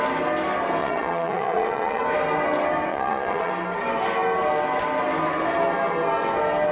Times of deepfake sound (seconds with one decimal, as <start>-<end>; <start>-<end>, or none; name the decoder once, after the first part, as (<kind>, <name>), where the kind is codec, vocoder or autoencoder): 0.8-2.0 (vocoder, Vocos); 2.9-3.5